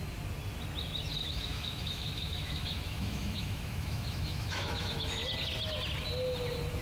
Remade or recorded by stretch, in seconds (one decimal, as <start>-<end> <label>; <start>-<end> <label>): 0.0-1.2 recorded; 1.2-5.2 remade; 5.2-6.8 recorded